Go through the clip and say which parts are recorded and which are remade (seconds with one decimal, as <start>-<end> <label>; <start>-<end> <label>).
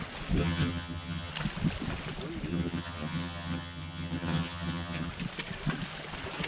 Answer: 0.0-0.4 recorded; 0.4-1.3 remade; 1.3-2.5 recorded; 2.5-5.1 remade; 5.1-6.5 recorded